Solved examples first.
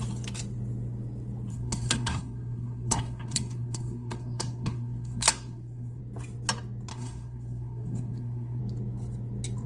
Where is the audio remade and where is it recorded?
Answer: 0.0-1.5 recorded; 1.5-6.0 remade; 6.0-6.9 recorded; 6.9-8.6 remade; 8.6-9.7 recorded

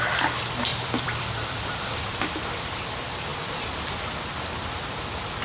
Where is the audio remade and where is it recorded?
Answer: 0.0-0.7 recorded; 0.7-2.2 remade; 2.2-3.3 recorded; 3.3-4.2 remade; 4.2-5.4 recorded

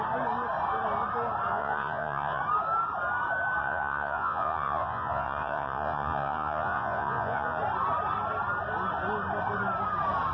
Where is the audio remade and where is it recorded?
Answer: 0.0-1.5 recorded; 1.5-2.4 remade; 2.4-3.6 recorded; 3.6-7.6 remade; 7.6-10.3 recorded

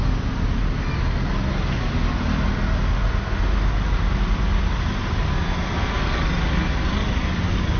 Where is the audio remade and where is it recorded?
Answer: 0.0-7.8 recorded

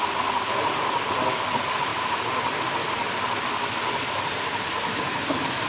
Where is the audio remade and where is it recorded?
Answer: 0.0-5.7 remade